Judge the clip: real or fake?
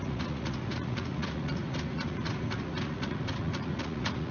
fake